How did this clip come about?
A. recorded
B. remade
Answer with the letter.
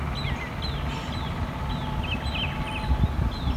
A